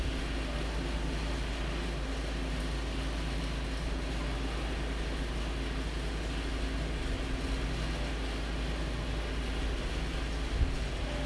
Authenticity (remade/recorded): recorded